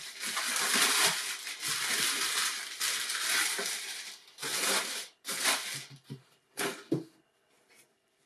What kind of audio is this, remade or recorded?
recorded